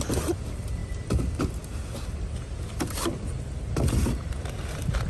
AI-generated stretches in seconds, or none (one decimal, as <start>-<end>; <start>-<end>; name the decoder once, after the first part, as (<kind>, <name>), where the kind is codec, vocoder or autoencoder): 0.0-0.8 (vocoder, BigVGAN v2); 3.9-5.1